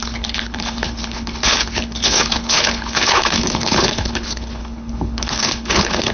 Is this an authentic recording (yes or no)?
no